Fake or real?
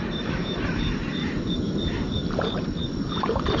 fake